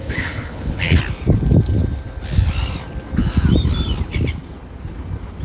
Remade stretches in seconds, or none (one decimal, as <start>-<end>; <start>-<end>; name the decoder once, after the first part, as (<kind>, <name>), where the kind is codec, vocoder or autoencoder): 0.0-1.0 (codec, HILCodec)